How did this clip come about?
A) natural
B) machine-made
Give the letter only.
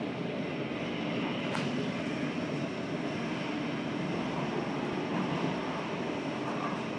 A